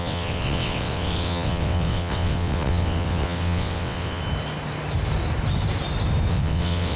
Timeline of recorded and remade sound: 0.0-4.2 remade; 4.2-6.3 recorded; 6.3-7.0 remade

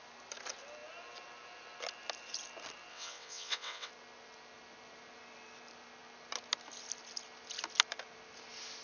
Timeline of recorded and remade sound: 0.0-2.9 recorded; 2.9-3.9 remade; 3.9-8.8 recorded

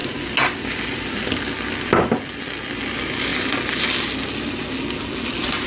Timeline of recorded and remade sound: 0.0-5.7 recorded

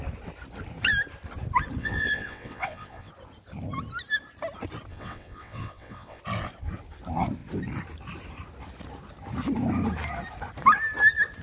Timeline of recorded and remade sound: 0.0-1.8 recorded; 1.8-3.1 remade; 3.1-4.9 recorded; 4.9-6.2 remade; 6.2-11.4 recorded

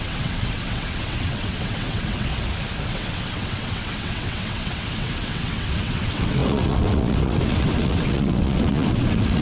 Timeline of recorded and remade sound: 0.0-2.3 remade; 2.3-2.9 recorded; 2.9-9.4 remade